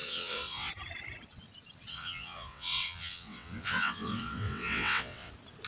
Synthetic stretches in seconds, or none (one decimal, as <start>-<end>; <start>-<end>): 0.0-0.7; 1.9-5.3